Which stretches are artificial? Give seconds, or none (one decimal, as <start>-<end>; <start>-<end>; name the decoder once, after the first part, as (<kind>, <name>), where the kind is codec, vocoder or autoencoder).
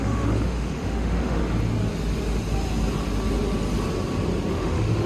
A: 0.0-1.4 (autoencoder, DAC-VAE); 4.5-5.1